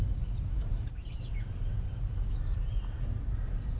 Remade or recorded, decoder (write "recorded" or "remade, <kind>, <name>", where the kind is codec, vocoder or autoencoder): recorded